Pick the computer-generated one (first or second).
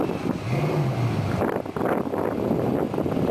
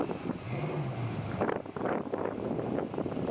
second